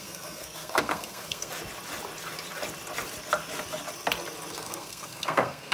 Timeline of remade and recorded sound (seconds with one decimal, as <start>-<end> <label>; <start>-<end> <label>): 0.0-1.5 remade; 1.5-4.5 recorded; 4.5-5.7 remade